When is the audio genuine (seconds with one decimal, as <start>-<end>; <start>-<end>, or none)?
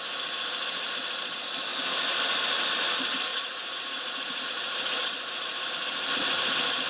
0.0-3.3; 5.7-6.9